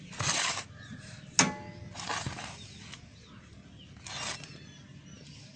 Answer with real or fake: real